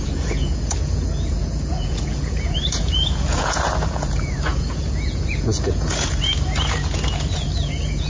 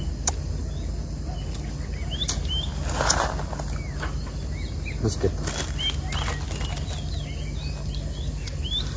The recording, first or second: second